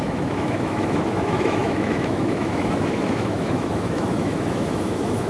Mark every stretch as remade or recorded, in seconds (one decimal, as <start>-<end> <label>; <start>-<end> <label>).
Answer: 0.0-5.3 remade